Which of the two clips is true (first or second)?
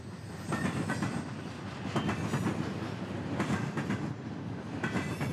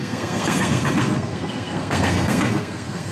first